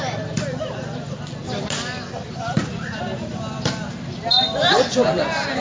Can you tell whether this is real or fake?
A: real